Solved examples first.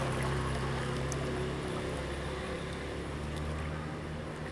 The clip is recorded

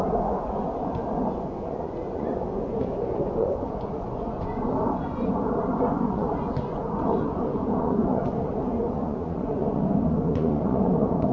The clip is remade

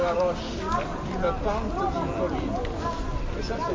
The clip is recorded